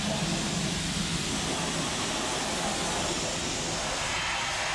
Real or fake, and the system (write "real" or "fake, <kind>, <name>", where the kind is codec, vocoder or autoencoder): real